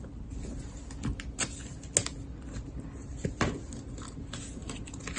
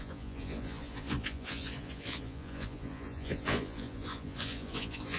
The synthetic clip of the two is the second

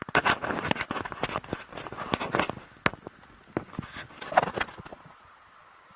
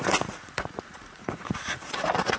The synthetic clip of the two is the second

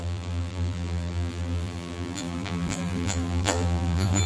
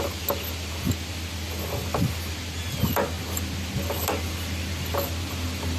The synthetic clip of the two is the first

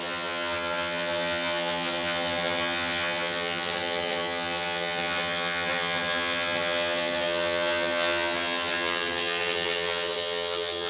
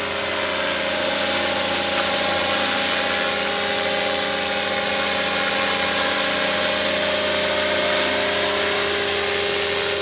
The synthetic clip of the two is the first